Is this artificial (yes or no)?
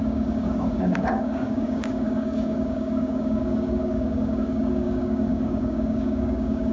yes